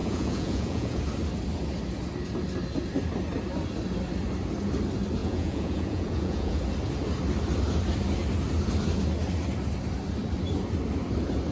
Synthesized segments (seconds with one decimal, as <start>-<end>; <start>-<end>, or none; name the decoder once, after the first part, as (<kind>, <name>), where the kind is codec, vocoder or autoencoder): 0.0-1.0 (vocoder, Vocos); 5.2-6.6